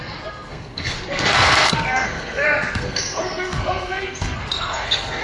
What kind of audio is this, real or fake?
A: fake